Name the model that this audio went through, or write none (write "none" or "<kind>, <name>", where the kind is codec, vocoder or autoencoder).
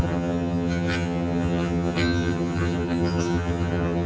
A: vocoder, HiFi-GAN